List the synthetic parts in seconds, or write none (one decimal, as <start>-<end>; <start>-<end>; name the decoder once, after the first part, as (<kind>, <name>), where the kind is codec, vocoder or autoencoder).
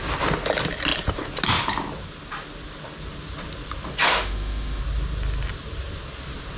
4.1-4.8 (autoencoder, DAC-VAE)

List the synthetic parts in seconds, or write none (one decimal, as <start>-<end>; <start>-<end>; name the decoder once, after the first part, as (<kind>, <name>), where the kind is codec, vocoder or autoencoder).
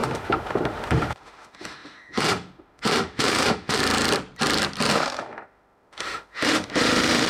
0.0-3.8 (autoencoder, DAC-VAE); 4.9-7.3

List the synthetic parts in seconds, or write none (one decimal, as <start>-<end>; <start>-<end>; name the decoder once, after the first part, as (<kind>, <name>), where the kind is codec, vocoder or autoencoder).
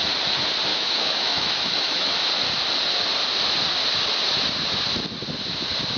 0.7-2.2 (autoencoder, DAC-VAE)